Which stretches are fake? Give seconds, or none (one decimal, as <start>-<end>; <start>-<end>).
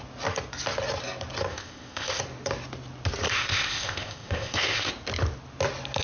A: 1.5-2.2; 3.3-4.9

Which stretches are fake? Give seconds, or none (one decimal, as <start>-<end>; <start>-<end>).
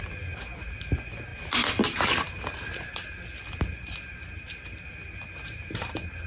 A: none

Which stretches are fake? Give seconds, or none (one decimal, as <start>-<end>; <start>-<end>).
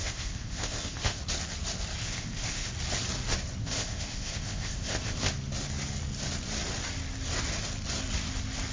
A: 0.0-1.2; 2.0-2.7; 3.6-5.3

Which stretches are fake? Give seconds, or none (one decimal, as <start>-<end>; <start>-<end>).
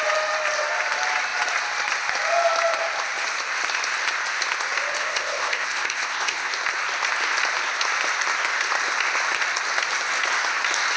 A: 5.0-6.5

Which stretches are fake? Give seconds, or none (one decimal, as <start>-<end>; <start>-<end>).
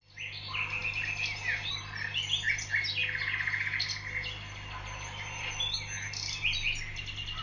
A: none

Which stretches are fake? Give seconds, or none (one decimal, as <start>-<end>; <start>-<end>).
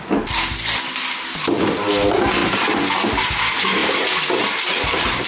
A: none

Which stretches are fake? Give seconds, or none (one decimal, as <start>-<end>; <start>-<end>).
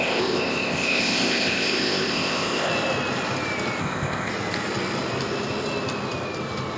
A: 0.0-2.7; 3.8-4.3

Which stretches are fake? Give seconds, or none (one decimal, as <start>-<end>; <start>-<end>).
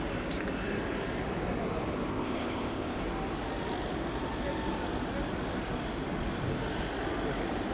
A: 2.1-3.0